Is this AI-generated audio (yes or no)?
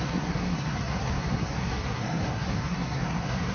yes